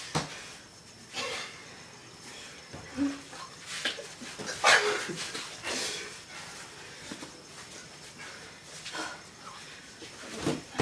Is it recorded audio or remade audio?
recorded